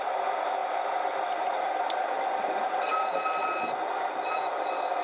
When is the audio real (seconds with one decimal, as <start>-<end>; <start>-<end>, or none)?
0.0-5.0